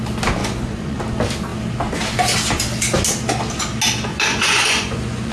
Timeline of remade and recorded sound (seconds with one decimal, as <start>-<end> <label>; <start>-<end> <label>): 0.0-0.4 recorded; 0.4-1.0 remade; 1.0-4.1 recorded; 4.1-5.3 remade